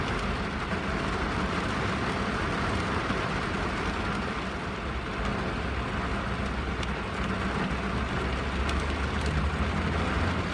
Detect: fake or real real